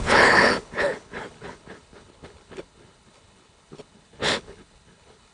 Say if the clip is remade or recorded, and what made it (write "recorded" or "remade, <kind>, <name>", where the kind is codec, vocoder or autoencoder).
remade, codec, HILCodec